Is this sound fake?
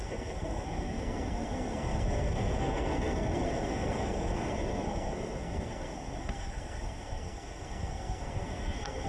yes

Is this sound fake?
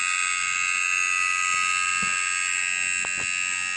no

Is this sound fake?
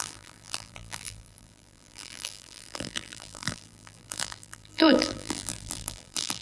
yes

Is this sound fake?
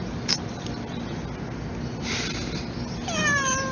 no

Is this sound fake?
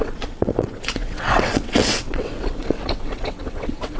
yes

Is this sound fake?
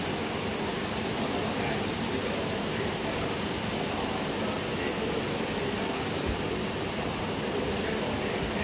no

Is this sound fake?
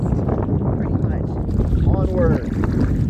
no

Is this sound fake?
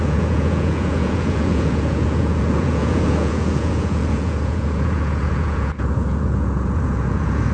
yes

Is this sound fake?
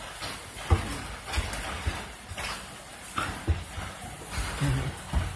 no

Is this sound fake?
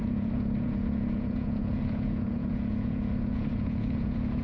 yes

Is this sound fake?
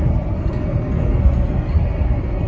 yes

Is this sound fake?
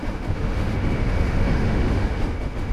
yes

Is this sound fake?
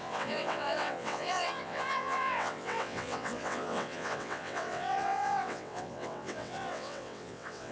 yes